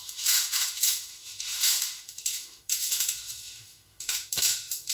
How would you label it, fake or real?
fake